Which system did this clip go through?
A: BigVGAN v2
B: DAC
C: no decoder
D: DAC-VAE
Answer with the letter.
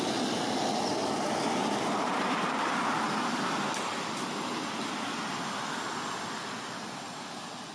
C